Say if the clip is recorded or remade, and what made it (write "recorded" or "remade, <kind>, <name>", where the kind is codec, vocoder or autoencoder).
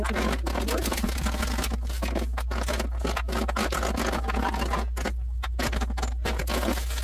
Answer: recorded